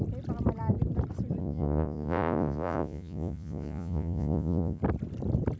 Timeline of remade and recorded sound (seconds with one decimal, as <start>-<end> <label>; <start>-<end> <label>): 0.0-1.4 recorded; 1.4-4.8 remade; 4.8-5.6 recorded